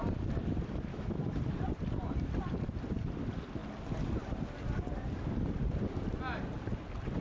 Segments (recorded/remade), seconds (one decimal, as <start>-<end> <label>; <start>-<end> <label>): 0.0-0.9 recorded; 0.9-1.4 remade; 1.4-7.2 recorded